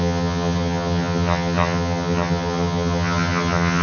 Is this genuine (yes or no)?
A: no